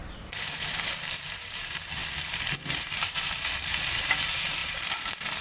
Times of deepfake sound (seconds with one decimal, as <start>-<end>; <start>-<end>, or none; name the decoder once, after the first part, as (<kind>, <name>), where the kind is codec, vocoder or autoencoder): 0.0-2.0 (vocoder, BigVGAN v2); 2.8-5.4

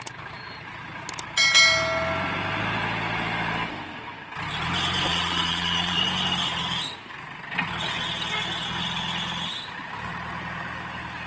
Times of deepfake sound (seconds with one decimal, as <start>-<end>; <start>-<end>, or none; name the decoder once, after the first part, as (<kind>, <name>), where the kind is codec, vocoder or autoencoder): 5.1-6.0 (vocoder, Vocos)

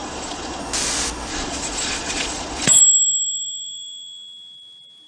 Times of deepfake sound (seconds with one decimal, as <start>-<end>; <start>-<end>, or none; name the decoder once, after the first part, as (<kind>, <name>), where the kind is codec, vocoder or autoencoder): 0.0-0.6 (vocoder, Vocos); 1.3-2.8

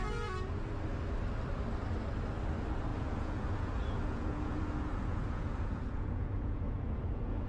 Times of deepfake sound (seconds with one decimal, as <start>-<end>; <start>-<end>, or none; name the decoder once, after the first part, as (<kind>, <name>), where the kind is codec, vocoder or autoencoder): 2.9-7.5 (vocoder, Vocos)

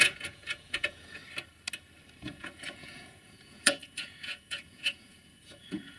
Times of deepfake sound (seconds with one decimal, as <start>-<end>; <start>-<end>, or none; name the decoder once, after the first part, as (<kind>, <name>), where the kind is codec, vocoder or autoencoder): 0.0-1.2 (vocoder, Vocos); 2.2-6.0

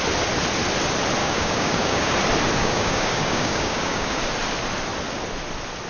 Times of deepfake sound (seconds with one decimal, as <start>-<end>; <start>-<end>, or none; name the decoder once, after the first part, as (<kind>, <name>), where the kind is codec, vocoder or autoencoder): 1.2-2.1 (codec, DAC); 2.6-4.2